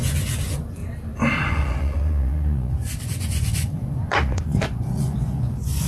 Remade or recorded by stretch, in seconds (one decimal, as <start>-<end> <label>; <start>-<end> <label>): 0.0-0.8 remade; 0.8-1.5 recorded; 1.5-5.9 remade